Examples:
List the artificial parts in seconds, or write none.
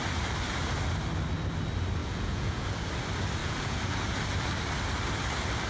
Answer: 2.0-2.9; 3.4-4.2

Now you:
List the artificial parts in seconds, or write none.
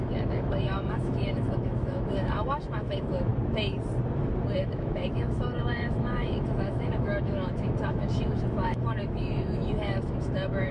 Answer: 0.0-3.3; 4.6-10.7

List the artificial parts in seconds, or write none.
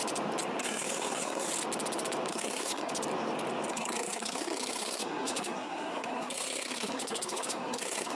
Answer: 0.6-1.5; 2.3-2.9; 3.7-8.2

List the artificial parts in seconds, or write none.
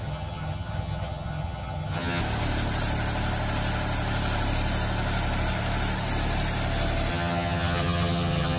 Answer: 0.0-2.2; 7.1-8.6